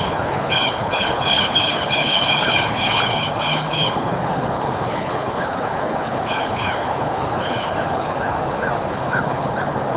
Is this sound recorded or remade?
remade